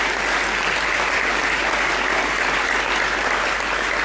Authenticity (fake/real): real